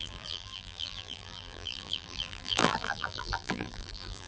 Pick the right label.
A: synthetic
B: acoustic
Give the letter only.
A